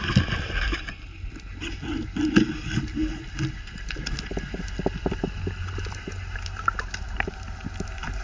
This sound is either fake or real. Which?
real